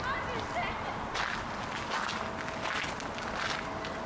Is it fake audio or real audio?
real